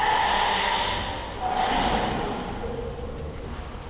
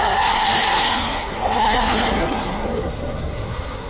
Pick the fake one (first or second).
second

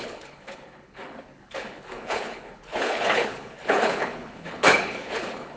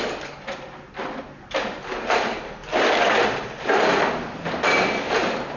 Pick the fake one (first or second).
first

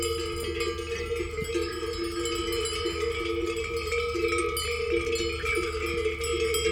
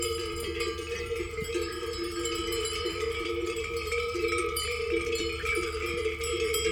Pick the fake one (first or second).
second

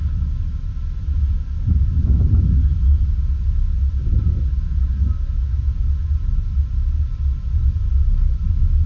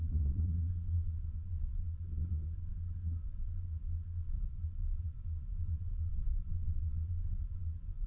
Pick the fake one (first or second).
second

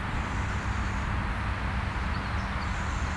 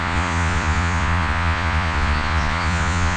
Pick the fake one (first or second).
second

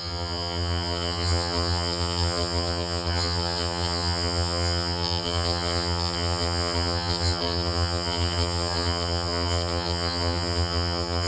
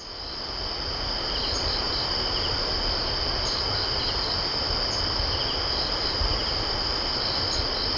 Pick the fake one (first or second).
first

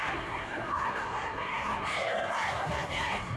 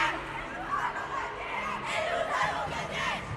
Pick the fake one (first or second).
first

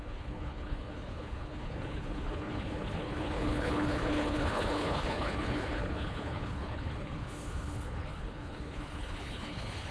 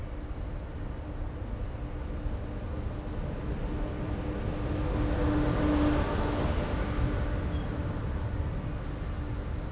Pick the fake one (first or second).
first